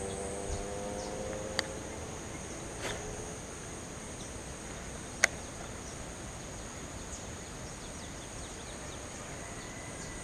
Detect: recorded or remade recorded